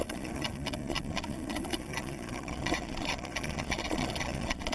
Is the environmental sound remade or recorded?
remade